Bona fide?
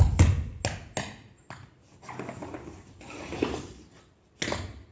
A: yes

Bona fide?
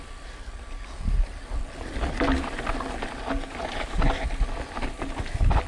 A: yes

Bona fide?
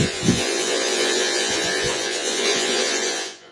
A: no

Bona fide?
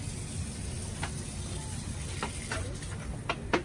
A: yes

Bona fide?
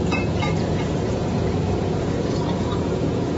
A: no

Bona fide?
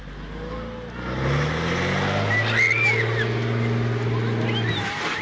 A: yes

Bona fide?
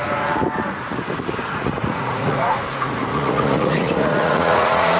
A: no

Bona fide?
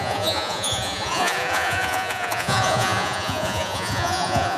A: no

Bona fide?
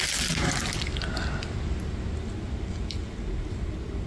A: yes